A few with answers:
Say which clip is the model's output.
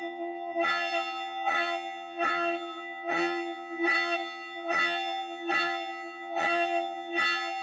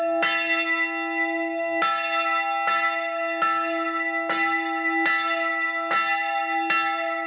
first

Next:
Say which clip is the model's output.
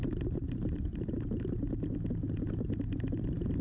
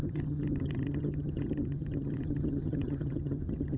second